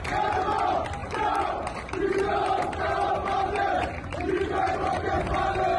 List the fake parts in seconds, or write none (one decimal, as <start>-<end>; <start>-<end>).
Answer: 1.0-4.5